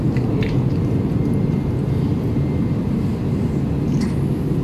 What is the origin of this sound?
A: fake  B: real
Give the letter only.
B